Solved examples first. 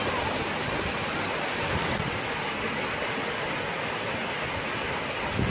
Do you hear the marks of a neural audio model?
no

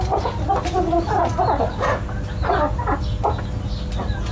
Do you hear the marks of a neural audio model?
no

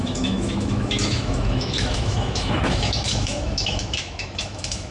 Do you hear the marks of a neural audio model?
yes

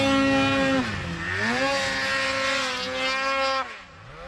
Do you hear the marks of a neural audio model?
no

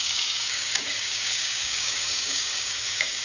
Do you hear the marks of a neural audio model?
yes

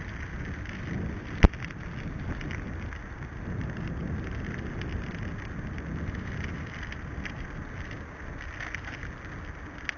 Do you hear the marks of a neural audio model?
no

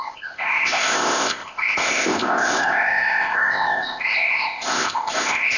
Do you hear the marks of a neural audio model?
yes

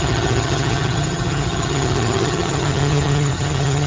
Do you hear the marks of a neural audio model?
yes